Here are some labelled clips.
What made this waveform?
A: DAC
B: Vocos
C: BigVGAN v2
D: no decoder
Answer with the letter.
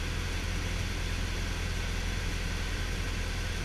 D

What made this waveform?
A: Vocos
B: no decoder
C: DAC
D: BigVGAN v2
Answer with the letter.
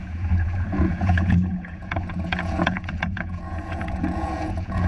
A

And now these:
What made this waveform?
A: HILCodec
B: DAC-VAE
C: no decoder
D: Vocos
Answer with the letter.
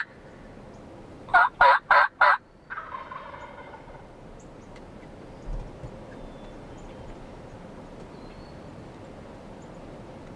C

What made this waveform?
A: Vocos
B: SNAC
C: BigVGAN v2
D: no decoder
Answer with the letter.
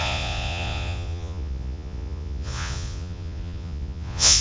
A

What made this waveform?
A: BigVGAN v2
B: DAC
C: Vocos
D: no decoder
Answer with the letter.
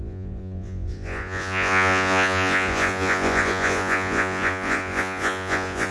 C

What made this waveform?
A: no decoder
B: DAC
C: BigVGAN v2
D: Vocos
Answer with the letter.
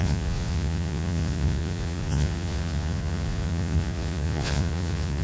D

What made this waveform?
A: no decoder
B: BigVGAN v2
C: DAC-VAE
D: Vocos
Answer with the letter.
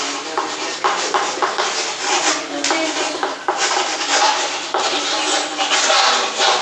A